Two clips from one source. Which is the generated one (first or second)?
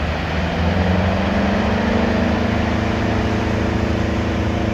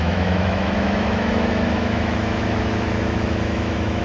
second